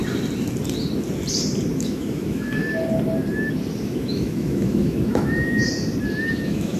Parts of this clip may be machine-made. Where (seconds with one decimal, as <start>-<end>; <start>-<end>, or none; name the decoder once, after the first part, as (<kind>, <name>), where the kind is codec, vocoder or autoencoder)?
1.7-2.6 (autoencoder, DAC-VAE); 3.8-5.6; 6.2-6.8